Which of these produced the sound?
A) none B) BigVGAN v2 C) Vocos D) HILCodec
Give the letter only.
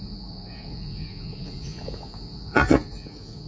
C